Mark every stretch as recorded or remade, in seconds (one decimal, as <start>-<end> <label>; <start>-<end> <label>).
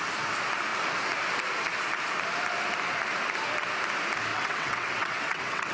0.0-4.3 recorded; 4.3-5.7 remade